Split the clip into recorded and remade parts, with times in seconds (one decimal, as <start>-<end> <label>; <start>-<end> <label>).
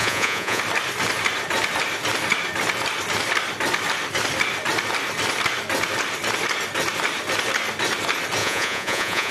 0.0-0.6 remade; 0.6-8.4 recorded; 8.4-9.3 remade